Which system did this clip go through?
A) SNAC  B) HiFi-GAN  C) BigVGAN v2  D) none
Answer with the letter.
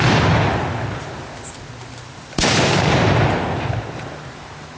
D